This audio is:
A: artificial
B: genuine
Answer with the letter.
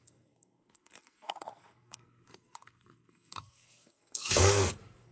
A